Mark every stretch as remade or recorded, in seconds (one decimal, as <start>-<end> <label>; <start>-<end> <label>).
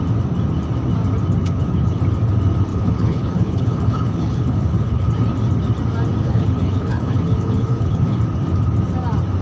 0.0-1.4 recorded; 1.4-2.0 remade; 2.0-2.7 recorded; 2.7-5.1 remade; 5.1-6.2 recorded; 6.2-8.2 remade; 8.2-9.4 recorded